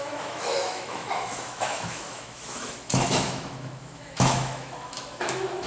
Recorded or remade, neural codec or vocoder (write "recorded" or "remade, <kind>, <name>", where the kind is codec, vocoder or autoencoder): remade, autoencoder, DAC-VAE